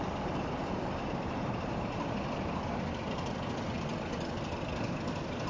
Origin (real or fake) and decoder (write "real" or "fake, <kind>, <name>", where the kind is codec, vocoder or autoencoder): fake, vocoder, BigVGAN v2